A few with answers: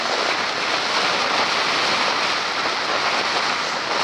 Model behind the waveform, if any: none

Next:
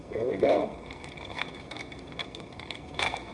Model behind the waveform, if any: codec, SNAC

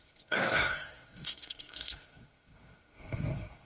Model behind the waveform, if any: codec, SNAC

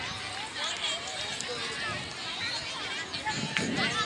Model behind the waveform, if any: none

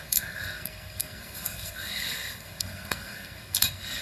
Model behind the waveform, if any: codec, SNAC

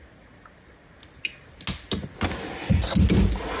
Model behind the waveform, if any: none